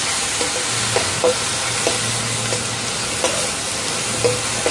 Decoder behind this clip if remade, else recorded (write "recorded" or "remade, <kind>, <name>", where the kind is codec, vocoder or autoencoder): recorded